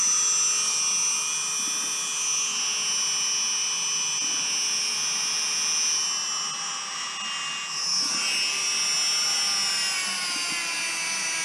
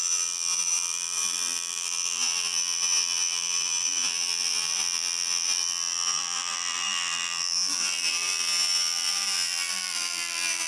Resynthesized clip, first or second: second